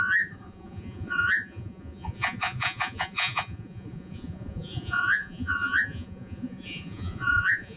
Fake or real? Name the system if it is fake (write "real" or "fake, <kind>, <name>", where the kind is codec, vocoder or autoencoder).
fake, vocoder, Vocos